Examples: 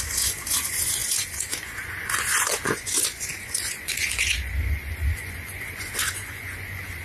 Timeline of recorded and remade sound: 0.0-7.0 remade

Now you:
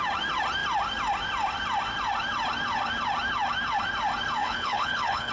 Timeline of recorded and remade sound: 0.0-4.4 recorded; 4.4-5.3 remade

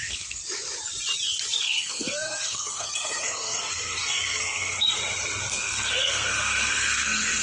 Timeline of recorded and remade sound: 0.0-0.4 remade; 0.4-1.6 recorded; 1.6-5.0 remade; 5.0-5.5 recorded; 5.5-7.4 remade

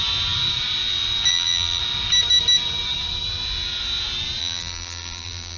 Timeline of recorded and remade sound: 0.0-1.3 recorded; 1.3-1.8 remade; 1.8-4.4 recorded; 4.4-5.6 remade

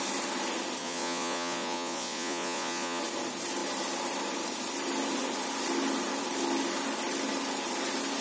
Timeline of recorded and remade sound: 0.0-0.8 recorded; 0.8-3.0 remade; 3.0-8.2 recorded